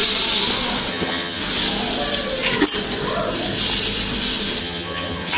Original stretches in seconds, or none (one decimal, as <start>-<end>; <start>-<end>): 0.0-0.9; 1.4-4.6